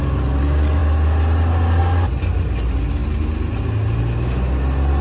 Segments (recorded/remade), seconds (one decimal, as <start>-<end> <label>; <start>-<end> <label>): 0.0-5.0 recorded